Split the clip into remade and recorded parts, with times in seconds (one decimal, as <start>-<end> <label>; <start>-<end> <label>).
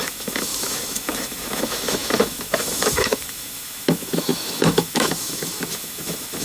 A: 0.0-6.4 remade